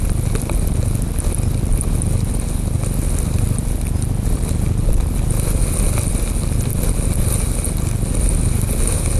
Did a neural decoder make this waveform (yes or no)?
no